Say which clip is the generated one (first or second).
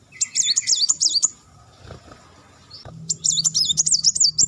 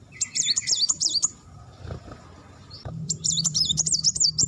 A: second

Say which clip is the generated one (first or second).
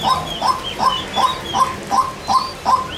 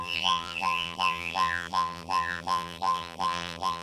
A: second